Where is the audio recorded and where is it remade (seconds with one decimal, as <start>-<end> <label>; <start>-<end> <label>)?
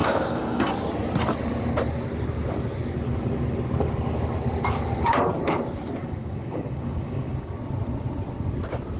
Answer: 0.0-0.7 remade; 0.7-6.0 recorded; 6.0-7.5 remade; 7.5-9.0 recorded